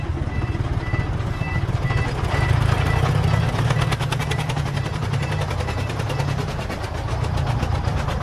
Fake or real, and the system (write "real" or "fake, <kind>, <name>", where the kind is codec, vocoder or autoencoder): real